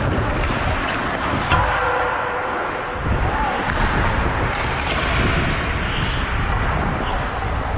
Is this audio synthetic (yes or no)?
no